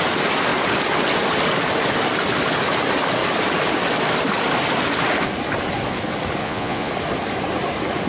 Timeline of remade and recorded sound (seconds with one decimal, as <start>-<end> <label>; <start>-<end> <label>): 0.0-6.4 recorded; 6.4-6.9 remade; 6.9-8.1 recorded